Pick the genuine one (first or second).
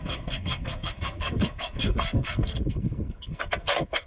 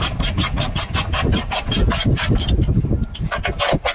second